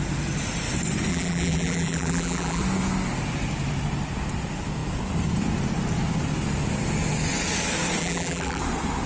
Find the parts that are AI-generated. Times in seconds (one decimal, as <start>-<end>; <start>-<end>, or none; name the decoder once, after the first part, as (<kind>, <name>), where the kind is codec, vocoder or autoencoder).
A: 1.1-2.6 (vocoder, BigVGAN v2); 8.0-8.6